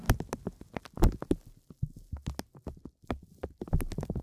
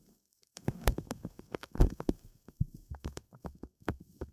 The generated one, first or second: second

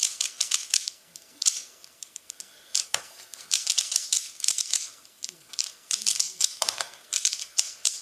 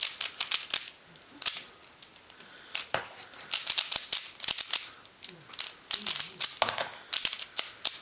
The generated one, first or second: first